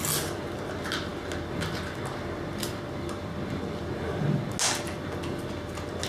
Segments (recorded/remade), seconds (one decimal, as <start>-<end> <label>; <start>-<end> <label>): 0.0-6.1 recorded